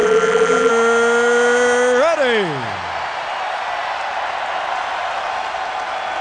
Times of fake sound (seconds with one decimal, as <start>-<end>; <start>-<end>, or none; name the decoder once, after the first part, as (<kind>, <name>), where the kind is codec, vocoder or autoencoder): 0.0-0.7 (vocoder, BigVGAN v2)